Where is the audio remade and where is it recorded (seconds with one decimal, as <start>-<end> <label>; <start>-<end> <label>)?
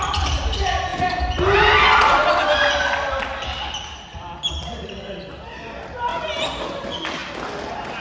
0.0-8.0 recorded